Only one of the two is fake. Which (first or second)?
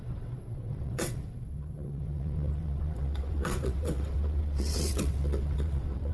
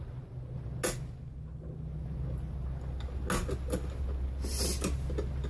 first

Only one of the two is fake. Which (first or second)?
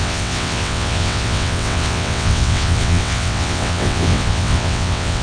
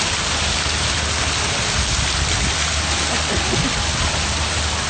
first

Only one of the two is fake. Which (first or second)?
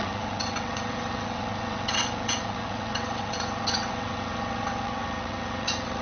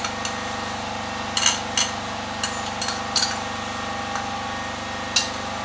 first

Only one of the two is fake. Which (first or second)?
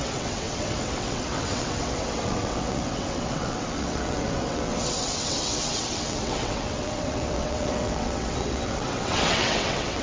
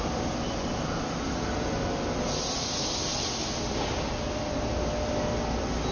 first